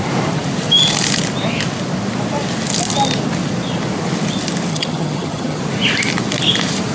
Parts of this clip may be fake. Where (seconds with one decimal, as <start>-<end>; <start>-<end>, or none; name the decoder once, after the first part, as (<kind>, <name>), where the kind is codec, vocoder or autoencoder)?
4.7-5.6 (vocoder, HiFi-GAN)